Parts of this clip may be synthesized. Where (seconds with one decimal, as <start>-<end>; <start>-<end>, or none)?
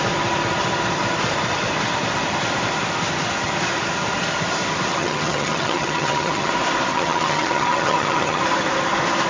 4.9-6.5; 6.9-8.4